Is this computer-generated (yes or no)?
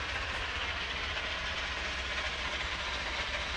no